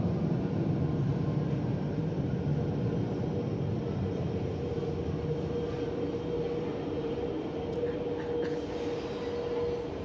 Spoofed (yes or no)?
no